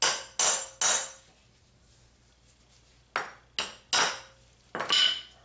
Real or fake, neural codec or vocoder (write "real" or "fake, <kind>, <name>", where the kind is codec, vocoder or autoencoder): real